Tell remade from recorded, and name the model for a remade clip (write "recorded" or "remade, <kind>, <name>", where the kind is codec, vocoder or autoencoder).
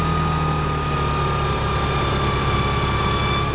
recorded